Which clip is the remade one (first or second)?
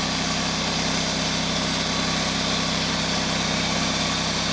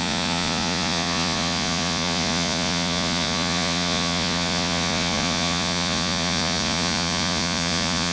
second